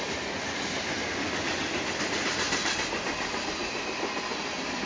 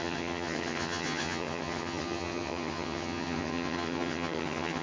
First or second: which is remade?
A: second